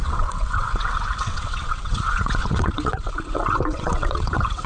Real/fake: fake